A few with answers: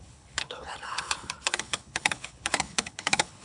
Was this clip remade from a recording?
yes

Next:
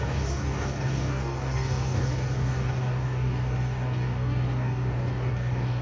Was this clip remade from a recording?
yes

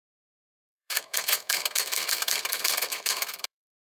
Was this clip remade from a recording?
yes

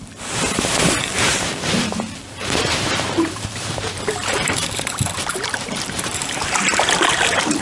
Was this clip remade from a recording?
yes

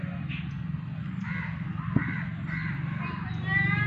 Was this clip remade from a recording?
no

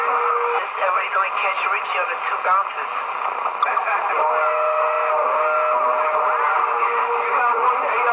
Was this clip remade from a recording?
no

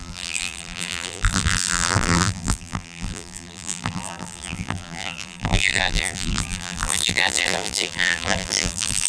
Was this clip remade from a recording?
yes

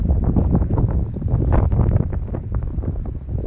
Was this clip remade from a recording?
no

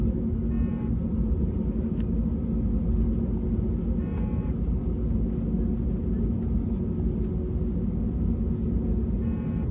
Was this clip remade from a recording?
no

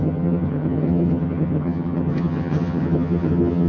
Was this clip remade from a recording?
yes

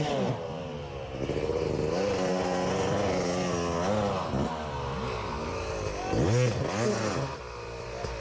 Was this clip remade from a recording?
no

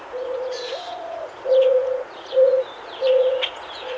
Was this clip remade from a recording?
yes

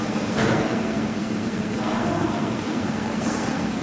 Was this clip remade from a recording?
yes